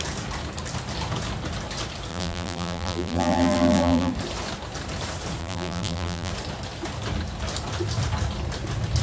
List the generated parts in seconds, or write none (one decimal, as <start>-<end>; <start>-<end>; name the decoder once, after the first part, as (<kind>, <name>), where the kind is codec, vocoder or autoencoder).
2.1-4.1 (vocoder, BigVGAN v2); 5.4-6.3